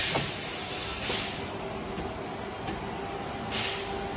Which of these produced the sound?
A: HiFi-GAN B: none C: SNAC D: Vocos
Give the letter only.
B